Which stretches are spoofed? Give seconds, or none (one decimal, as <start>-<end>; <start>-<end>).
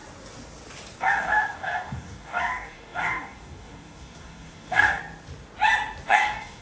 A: 1.0-5.0; 6.1-6.6